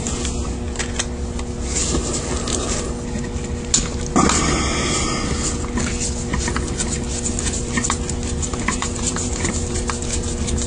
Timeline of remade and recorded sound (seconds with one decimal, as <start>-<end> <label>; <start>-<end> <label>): 0.0-8.5 recorded; 8.5-9.5 remade; 9.5-10.7 recorded